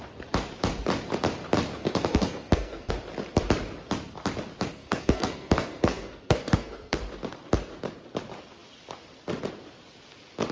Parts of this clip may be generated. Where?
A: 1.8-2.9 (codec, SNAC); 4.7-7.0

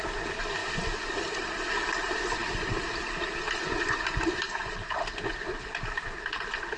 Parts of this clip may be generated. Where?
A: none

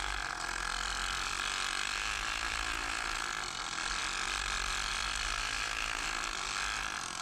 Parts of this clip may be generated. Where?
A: none

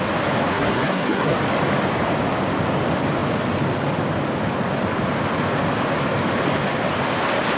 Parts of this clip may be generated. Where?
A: 0.5-1.4 (codec, SNAC)

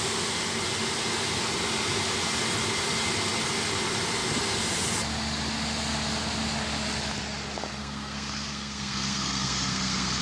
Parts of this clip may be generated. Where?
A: 7.8-10.2 (codec, SNAC)

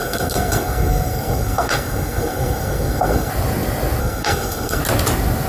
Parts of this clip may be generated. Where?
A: 0.0-3.3 (codec, SNAC); 4.0-4.8